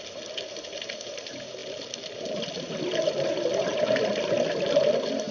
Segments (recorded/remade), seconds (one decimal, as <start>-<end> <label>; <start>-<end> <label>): 0.0-5.3 recorded